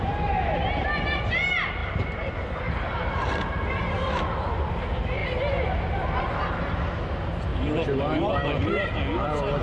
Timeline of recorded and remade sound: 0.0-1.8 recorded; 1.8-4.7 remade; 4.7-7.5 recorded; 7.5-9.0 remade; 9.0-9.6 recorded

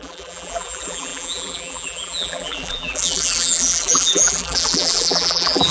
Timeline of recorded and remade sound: 0.0-5.7 remade

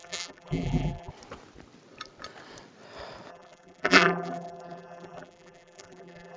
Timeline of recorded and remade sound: 0.0-1.1 remade; 1.1-3.3 recorded; 3.3-6.4 remade

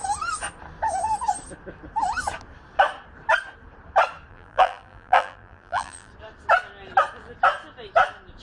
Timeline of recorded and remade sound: 0.0-4.3 recorded; 4.3-6.1 remade; 6.1-8.4 recorded

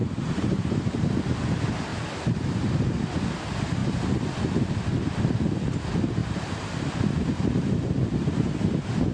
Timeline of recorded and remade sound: 0.0-1.1 remade; 1.1-6.2 recorded; 6.2-6.9 remade; 6.9-9.1 recorded